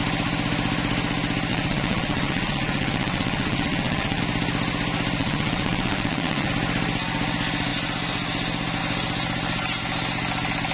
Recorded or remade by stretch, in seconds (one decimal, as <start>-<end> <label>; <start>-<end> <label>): 0.0-1.5 recorded; 1.5-4.2 remade; 4.2-5.2 recorded; 5.2-6.5 remade; 6.5-10.7 recorded